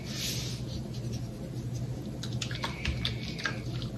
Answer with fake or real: real